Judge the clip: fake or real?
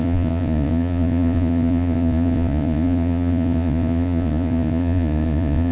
fake